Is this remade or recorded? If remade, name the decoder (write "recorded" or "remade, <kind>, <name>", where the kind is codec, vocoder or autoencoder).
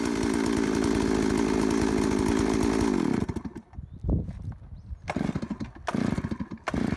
recorded